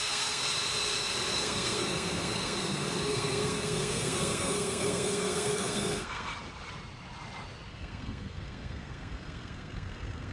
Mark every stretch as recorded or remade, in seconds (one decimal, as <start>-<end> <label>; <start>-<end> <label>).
0.0-0.4 remade; 0.4-1.3 recorded; 1.3-6.3 remade; 6.3-7.7 recorded; 7.7-10.3 remade